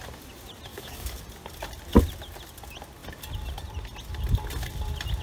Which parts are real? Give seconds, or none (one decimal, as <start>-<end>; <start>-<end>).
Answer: 0.0-0.7; 1.2-5.2